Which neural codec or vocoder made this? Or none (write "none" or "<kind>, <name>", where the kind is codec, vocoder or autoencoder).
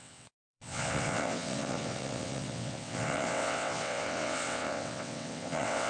vocoder, WaveNeXt